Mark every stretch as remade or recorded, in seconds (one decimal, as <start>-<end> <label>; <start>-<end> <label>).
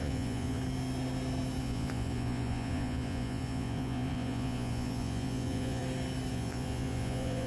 0.0-0.6 remade; 0.6-1.6 recorded; 1.6-5.8 remade; 5.8-6.3 recorded; 6.3-7.5 remade